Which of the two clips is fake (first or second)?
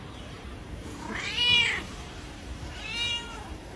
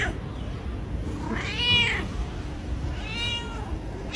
first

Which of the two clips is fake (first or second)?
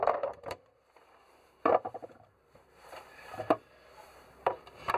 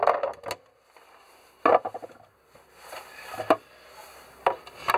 first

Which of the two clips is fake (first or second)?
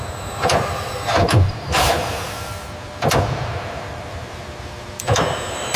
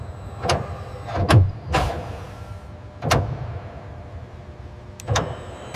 first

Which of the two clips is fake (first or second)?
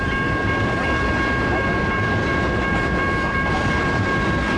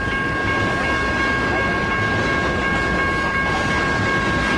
first